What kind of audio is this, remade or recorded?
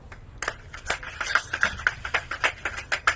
recorded